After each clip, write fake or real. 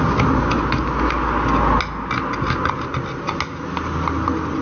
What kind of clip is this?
real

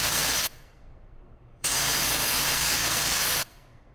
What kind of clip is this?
fake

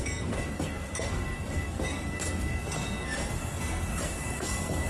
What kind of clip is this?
fake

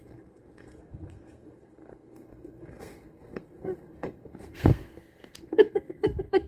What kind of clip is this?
fake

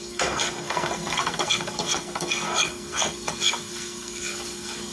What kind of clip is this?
fake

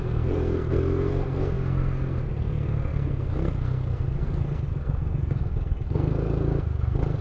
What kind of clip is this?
fake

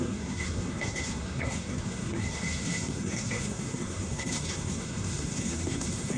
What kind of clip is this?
fake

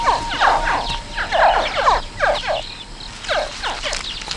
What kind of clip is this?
real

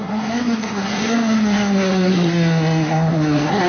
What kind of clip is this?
fake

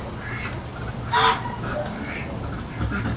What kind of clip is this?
real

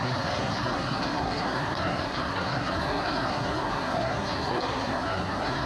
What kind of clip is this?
fake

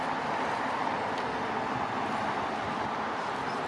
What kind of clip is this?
real